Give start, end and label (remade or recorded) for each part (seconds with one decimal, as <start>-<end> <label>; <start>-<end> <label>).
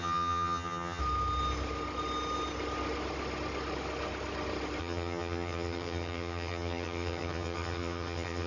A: 0.0-1.0 remade; 1.0-4.8 recorded; 4.8-8.5 remade